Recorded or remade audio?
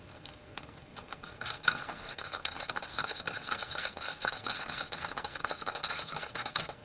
remade